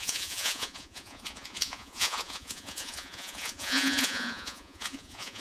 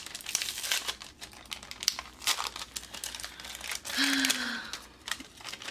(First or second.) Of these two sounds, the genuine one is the second